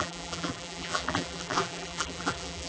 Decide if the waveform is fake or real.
fake